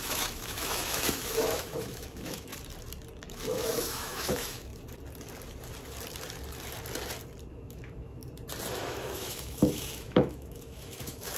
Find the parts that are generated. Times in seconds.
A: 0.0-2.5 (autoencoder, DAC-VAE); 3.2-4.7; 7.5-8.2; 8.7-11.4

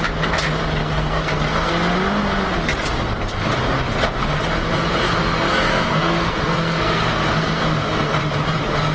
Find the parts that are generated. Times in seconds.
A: 0.8-1.7 (codec, SNAC); 5.7-8.2

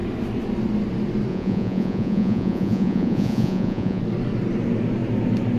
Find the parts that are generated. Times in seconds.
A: 1.3-4.0 (vocoder, Vocos)

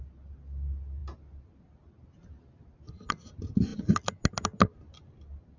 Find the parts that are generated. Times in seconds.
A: none

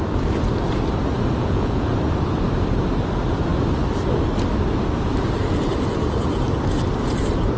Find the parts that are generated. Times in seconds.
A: 1.4-1.9 (vocoder, Vocos)

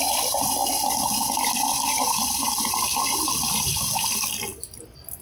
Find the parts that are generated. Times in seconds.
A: 0.6-3.7 (vocoder, BigVGAN v2)

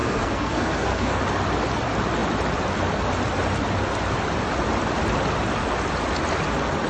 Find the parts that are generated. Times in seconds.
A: 0.0-1.2 (codec, SNAC)

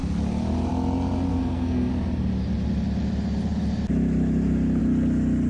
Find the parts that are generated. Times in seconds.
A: 1.3-1.9 (codec, SNAC)